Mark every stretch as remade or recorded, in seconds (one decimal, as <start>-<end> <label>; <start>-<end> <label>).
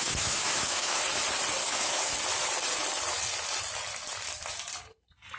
0.0-1.0 remade; 1.0-1.6 recorded; 1.6-2.1 remade; 2.1-5.4 recorded